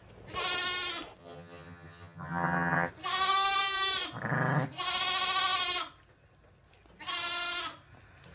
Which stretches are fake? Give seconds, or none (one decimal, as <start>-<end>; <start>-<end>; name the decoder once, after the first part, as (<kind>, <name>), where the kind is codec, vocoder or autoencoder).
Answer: 1.2-2.9 (vocoder, HiFi-GAN)